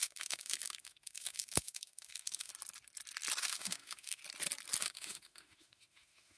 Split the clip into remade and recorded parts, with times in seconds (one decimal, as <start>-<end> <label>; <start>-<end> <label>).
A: 0.0-2.5 remade; 2.5-3.4 recorded; 3.4-4.2 remade; 4.2-4.8 recorded; 4.8-6.4 remade